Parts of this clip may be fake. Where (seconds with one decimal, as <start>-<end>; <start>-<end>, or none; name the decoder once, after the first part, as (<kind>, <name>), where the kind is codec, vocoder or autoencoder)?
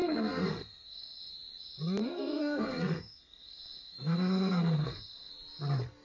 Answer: 0.0-1.2 (codec, SNAC); 2.0-5.3